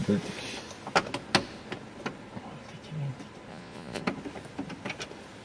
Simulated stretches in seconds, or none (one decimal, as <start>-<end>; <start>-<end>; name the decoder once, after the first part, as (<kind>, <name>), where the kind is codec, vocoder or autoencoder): 3.5-4.0 (vocoder, Vocos)